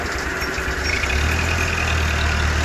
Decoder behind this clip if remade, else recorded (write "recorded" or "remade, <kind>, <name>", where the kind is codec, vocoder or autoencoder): recorded